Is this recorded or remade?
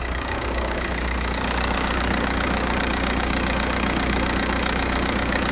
remade